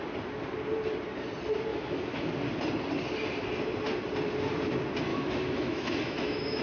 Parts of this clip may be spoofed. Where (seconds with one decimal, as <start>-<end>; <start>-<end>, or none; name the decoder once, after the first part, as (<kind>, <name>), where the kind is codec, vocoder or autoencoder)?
1.7-2.3 (autoencoder, DAC-VAE); 5.1-6.6